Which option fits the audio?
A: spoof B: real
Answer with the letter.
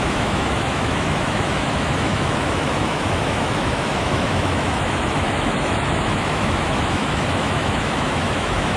A